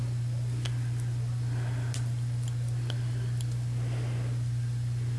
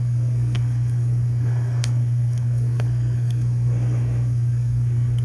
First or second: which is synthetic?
second